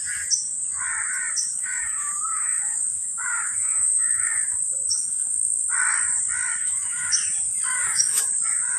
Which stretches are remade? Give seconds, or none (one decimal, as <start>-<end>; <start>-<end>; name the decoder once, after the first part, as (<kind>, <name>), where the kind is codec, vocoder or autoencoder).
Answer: 1.6-5.7 (autoencoder, DAC-VAE); 6.6-7.1; 7.7-8.2